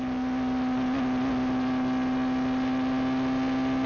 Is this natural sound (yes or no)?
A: yes